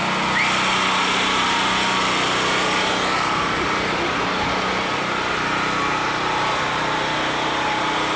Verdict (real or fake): real